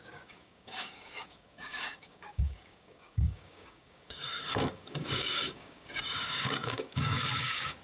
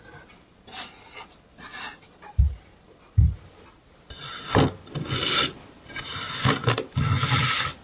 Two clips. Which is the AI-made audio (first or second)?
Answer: first